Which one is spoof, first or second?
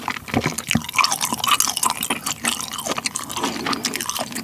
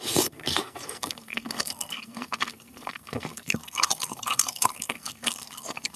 second